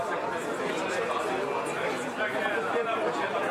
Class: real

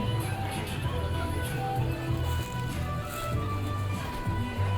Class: real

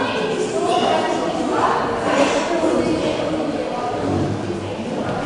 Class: real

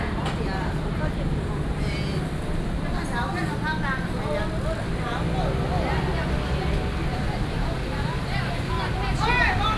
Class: real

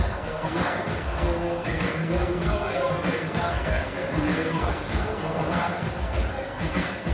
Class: fake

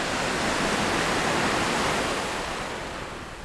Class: real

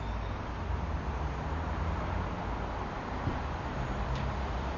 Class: real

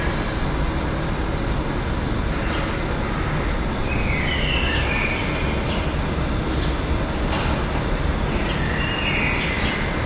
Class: real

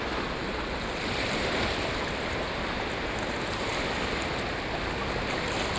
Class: real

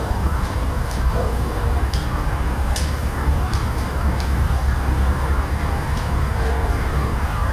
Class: fake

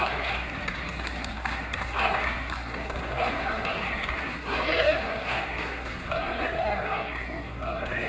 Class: fake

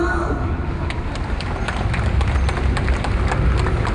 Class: real